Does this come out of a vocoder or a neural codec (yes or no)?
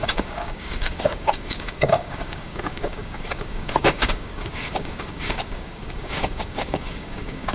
yes